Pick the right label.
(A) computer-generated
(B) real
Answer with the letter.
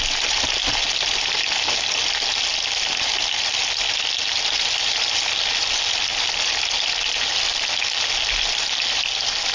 B